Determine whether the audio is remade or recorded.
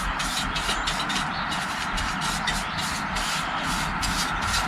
recorded